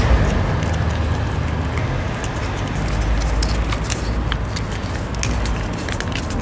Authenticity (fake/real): real